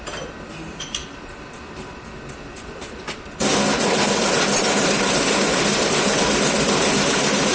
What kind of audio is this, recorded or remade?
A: recorded